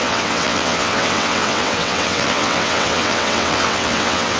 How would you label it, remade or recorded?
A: remade